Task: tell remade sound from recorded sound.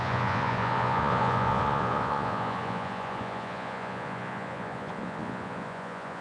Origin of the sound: remade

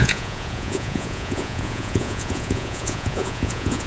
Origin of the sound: remade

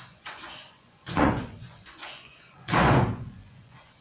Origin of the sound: remade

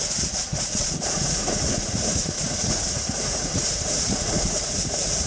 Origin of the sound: remade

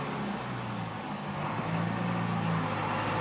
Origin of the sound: recorded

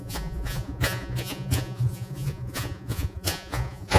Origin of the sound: remade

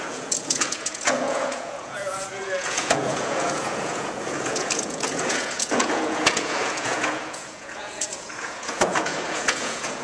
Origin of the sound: remade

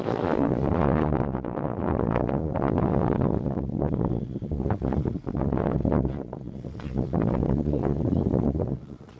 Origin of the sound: remade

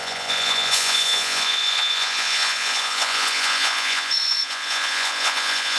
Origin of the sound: remade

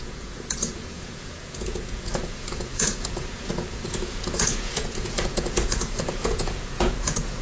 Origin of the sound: remade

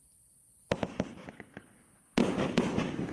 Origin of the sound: recorded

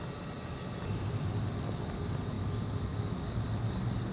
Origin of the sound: recorded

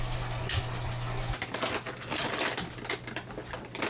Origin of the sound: recorded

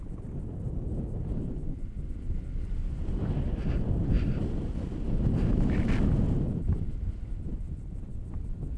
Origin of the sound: recorded